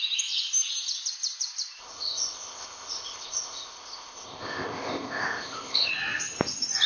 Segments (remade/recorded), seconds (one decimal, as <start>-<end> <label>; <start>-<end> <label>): 0.0-1.8 recorded; 1.8-5.9 remade; 5.9-6.9 recorded